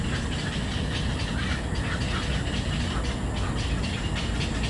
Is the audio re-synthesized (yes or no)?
no